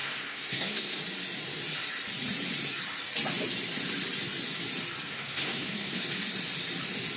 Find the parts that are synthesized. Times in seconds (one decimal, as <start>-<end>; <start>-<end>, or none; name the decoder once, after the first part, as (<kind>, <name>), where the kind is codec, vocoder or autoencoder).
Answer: 0.0-1.0 (codec, SNAC); 5.1-6.0